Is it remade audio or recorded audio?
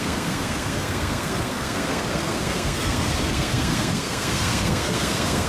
remade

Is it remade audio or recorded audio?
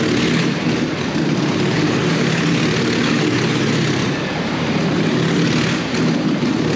recorded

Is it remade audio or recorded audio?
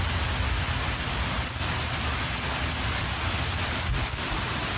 recorded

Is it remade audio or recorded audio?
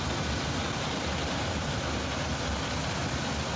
recorded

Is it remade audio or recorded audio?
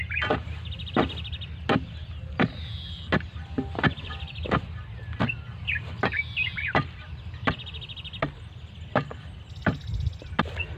recorded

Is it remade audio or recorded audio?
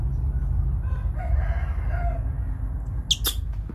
recorded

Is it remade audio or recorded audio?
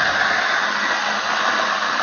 recorded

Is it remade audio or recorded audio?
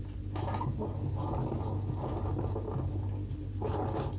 recorded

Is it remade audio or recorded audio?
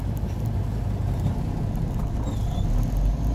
recorded